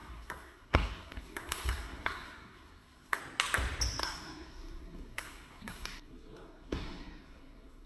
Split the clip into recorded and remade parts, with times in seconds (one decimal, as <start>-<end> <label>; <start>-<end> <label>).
0.0-3.2 remade; 3.2-4.0 recorded; 4.0-7.9 remade